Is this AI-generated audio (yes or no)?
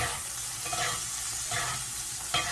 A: no